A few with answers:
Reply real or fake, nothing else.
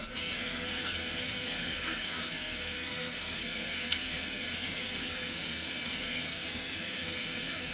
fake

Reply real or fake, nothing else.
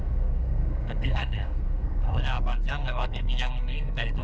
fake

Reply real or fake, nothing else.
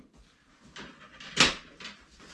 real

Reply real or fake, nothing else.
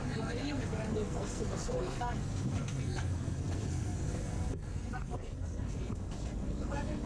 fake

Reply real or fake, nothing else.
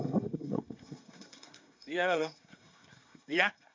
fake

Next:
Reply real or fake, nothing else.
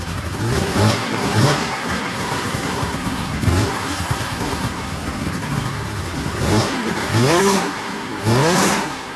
fake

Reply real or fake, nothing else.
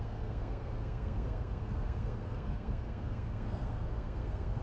fake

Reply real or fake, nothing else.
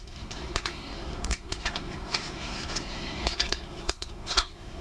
fake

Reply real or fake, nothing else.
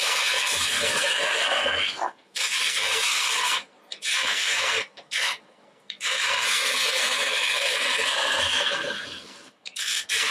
fake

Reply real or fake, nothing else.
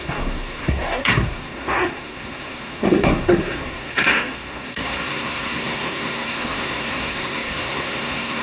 fake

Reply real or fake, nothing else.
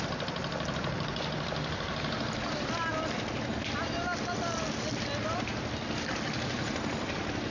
real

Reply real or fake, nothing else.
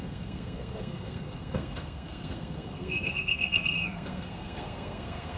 fake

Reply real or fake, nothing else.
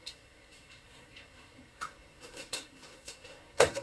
fake